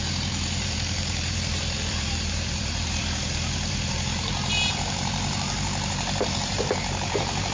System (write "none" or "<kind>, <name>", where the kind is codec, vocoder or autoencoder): vocoder, BigVGAN v2